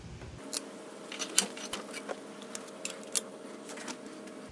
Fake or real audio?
real